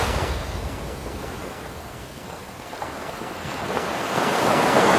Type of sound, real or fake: fake